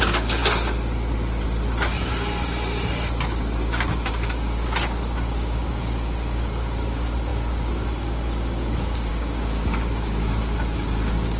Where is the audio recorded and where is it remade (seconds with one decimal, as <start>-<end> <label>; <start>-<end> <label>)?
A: 0.0-0.4 remade; 0.4-4.1 recorded; 4.1-11.4 remade